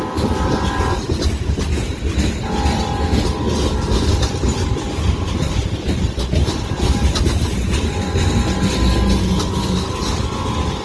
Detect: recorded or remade recorded